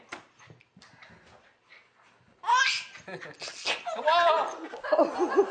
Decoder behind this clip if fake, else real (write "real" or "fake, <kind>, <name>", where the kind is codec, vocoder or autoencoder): real